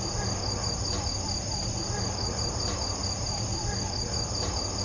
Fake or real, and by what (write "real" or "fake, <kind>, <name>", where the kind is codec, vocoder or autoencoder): real